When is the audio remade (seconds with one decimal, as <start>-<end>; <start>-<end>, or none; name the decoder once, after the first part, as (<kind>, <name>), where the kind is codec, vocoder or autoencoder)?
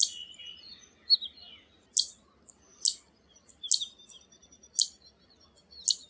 none